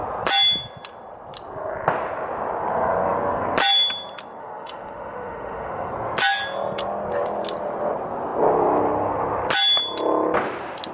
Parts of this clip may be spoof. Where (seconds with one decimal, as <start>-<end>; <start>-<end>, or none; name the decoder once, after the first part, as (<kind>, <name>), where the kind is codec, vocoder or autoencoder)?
4.4-5.9 (autoencoder, DAC-VAE)